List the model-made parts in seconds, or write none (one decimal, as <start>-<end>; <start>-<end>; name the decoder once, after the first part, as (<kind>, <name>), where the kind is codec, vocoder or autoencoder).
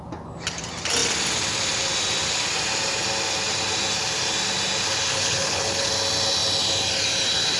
5.1-5.9 (codec, HILCodec)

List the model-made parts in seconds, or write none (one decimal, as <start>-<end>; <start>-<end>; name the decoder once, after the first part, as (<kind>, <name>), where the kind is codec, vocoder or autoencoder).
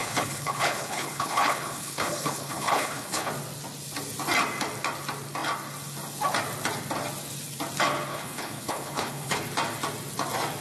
0.0-3.3 (codec, HILCodec); 8.1-9.4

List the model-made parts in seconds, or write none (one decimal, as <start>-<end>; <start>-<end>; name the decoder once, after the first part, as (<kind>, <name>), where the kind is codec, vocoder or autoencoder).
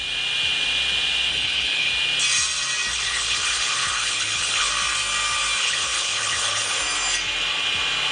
1.3-1.9 (codec, HILCodec); 2.9-4.7; 5.6-6.8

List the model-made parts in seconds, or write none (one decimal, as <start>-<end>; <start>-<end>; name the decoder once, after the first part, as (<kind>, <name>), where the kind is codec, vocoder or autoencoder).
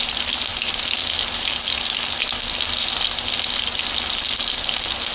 none